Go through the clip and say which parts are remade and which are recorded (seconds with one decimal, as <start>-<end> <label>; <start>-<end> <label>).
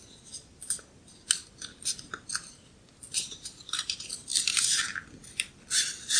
0.0-4.3 recorded; 4.3-6.2 remade